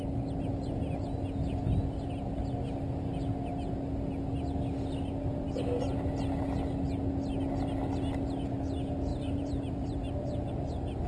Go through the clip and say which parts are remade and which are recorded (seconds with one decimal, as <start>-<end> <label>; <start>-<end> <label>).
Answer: 0.0-9.1 recorded; 9.1-10.5 remade; 10.5-11.1 recorded